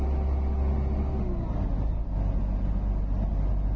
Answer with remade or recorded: recorded